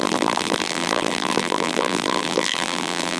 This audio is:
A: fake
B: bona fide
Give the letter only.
A